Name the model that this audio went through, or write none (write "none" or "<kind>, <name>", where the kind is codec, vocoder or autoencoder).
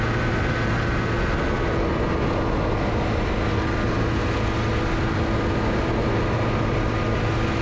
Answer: none